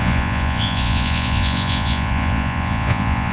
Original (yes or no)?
no